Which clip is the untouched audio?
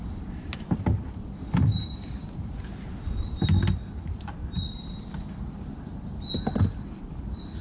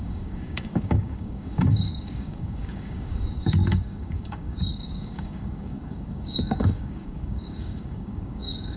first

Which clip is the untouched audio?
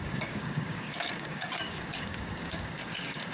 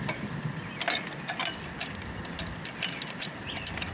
second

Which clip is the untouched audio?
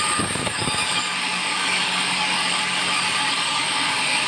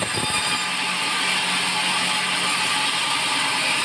second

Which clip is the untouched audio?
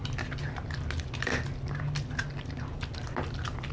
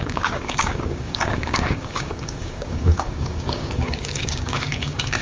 first